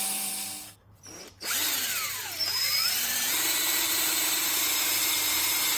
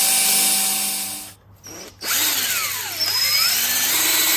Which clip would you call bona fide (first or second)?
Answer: second